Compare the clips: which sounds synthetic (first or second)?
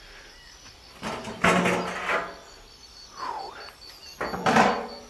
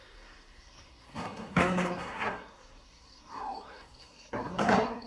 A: second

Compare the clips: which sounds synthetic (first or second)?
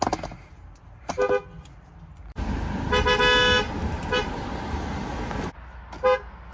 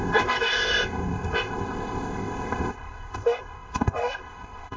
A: second